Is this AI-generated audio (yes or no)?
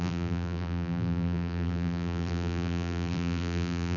yes